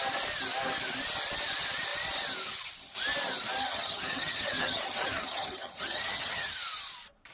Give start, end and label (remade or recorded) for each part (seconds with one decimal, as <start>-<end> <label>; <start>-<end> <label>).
0.0-3.6 recorded; 3.6-6.6 remade; 6.6-7.3 recorded